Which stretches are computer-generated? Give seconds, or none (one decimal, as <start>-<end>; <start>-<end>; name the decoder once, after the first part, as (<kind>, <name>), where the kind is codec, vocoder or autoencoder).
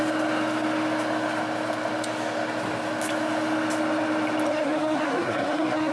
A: 4.5-5.9 (codec, SNAC)